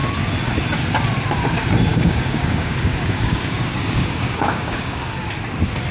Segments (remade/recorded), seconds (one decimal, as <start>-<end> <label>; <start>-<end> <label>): 0.0-1.9 recorded; 1.9-5.1 remade; 5.1-5.9 recorded

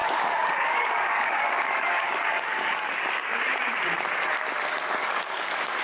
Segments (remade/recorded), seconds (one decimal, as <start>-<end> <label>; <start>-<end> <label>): 0.0-3.4 remade; 3.4-5.0 recorded; 5.0-5.8 remade

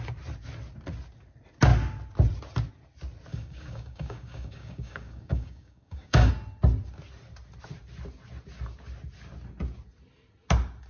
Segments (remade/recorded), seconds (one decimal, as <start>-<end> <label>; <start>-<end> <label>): 0.0-3.3 recorded; 3.3-6.3 remade; 6.3-10.9 recorded

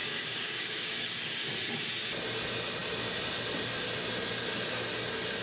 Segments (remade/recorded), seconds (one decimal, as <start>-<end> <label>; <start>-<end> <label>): 0.0-1.5 remade; 1.5-5.4 recorded

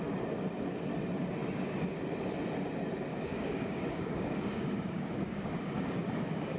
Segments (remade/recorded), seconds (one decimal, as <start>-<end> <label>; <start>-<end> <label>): 0.0-3.1 recorded; 3.1-6.6 remade

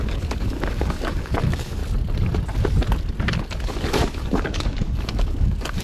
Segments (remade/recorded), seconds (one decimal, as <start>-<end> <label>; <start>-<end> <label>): 0.0-1.8 remade; 1.8-3.6 recorded; 3.6-5.8 remade

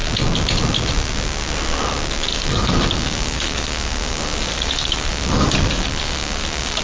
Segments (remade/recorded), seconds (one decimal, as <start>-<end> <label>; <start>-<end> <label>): 0.0-2.3 recorded; 2.3-6.8 remade